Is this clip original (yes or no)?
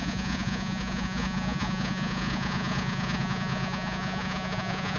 no